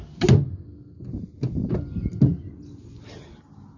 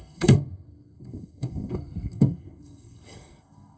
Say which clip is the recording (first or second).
first